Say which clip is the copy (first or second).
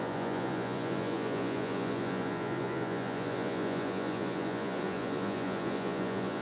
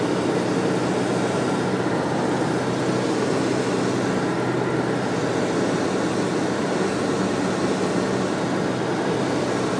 first